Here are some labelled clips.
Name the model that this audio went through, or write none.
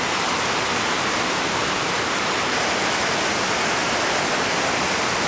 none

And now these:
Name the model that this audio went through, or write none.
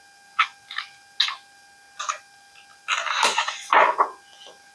none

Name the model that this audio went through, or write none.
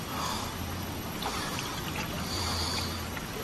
vocoder, BigVGAN v2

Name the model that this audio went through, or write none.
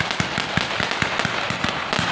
none